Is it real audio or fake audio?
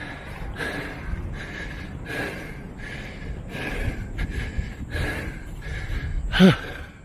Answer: real